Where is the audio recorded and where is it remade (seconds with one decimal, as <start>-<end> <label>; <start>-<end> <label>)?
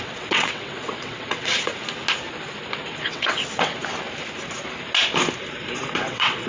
0.0-1.7 remade; 1.7-3.1 recorded; 3.1-3.7 remade; 3.7-5.9 recorded; 5.9-6.5 remade